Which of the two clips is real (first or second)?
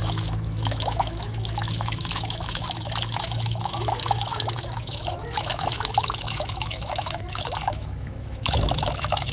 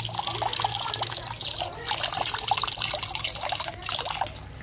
second